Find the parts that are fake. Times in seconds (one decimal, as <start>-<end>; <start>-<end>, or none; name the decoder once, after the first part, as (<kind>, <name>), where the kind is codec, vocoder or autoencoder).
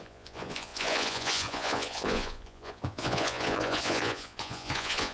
0.0-5.1 (vocoder, Vocos)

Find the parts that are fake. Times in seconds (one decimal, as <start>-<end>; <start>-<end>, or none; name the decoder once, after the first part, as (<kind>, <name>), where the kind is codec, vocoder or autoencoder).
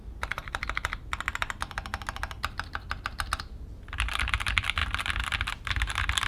none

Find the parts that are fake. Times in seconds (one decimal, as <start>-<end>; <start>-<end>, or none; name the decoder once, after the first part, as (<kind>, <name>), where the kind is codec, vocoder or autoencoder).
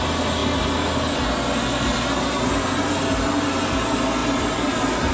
none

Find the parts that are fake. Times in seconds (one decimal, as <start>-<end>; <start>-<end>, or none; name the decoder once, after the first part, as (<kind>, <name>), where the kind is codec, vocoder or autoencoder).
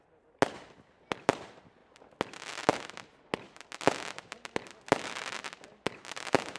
none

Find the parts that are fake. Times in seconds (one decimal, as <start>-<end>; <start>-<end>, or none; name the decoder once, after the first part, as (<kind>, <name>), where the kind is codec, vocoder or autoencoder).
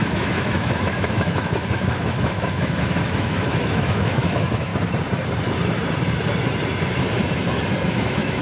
0.0-4.7 (autoencoder, DAC-VAE); 7.9-8.4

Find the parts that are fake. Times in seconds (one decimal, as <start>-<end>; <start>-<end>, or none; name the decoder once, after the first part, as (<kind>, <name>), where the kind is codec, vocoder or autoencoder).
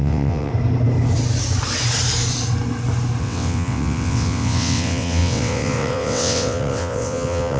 0.0-0.5 (vocoder, WaveNeXt); 3.2-7.6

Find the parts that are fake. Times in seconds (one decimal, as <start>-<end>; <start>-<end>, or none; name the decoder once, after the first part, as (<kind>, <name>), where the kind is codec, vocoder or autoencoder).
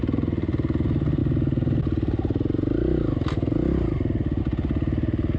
none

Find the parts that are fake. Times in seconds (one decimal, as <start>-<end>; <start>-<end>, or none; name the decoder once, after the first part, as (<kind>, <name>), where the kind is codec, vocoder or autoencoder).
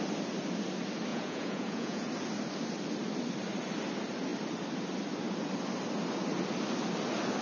1.1-2.1 (vocoder, Vocos)